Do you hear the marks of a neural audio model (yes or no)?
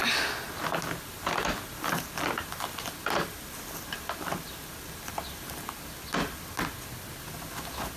no